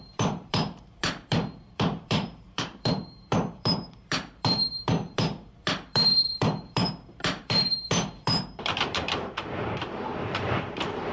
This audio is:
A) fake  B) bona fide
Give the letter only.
A